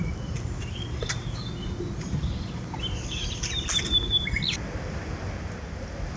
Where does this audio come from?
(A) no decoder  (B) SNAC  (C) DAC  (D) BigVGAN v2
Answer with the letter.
A